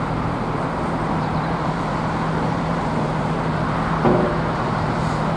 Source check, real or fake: fake